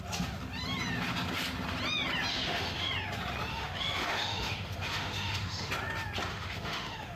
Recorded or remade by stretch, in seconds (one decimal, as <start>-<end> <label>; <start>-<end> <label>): 0.0-2.3 recorded; 2.3-2.9 remade; 2.9-3.5 recorded; 3.5-5.7 remade; 5.7-6.3 recorded; 6.3-7.2 remade